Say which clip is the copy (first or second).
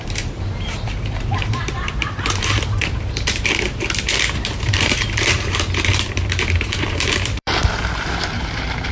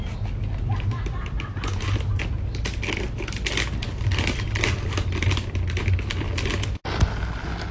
first